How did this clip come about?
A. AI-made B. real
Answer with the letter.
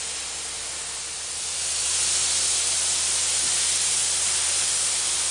B